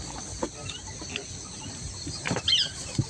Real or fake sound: real